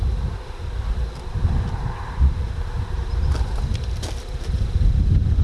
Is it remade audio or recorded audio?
remade